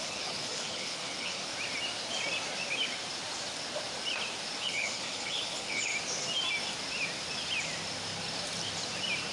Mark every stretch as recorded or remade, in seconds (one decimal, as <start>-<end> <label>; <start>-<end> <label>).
0.0-1.5 remade; 1.5-4.6 recorded; 4.6-5.9 remade; 5.9-9.3 recorded

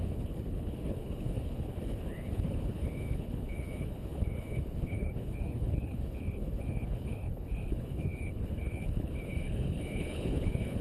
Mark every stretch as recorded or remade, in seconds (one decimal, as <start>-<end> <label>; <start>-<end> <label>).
0.0-10.8 remade